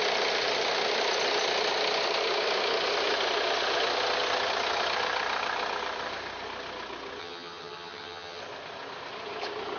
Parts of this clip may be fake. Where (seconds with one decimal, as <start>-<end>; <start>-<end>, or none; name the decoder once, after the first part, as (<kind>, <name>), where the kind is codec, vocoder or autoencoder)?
7.2-8.4 (vocoder, HiFi-GAN)